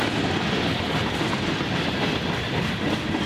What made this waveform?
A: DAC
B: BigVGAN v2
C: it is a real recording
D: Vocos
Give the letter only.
B